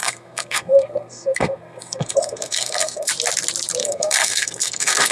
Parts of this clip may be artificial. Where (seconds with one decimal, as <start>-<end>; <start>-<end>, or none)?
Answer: 0.0-3.1; 3.8-5.1